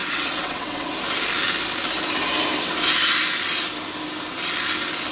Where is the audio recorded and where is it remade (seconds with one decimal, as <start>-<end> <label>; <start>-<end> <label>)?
0.0-0.9 remade; 0.9-5.1 recorded